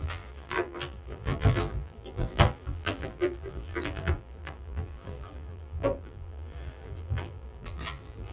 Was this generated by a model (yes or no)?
yes